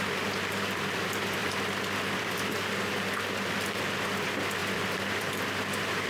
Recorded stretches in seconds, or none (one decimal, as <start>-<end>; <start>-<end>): none